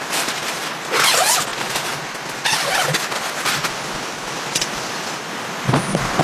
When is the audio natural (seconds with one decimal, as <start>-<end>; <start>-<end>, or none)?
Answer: 0.0-6.2